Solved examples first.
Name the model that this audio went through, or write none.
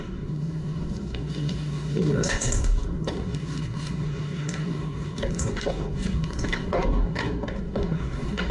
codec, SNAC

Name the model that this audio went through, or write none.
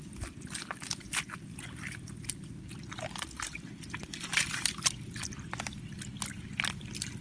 none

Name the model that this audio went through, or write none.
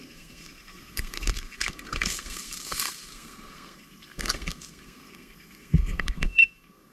codec, SNAC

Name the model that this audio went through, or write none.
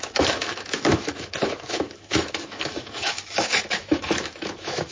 autoencoder, DAC-VAE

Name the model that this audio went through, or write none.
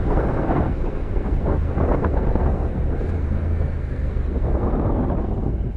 codec, SNAC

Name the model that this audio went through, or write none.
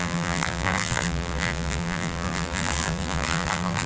vocoder, BigVGAN v2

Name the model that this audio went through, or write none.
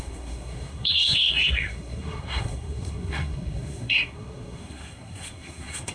codec, SNAC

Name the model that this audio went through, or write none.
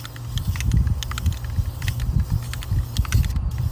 none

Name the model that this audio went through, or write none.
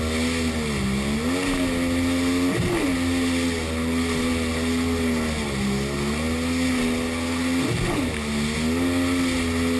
none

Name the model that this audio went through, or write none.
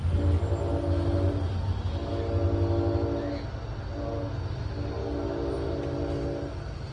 none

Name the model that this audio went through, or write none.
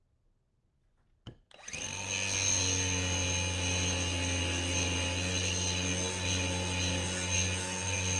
none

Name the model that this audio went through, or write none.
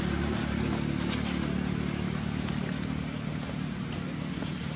none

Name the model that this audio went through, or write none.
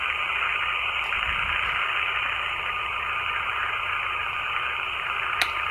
none